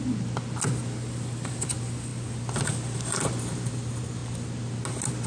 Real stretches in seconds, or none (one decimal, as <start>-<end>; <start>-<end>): 0.0-5.3